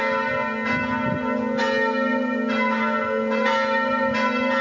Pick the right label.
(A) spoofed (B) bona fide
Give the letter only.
B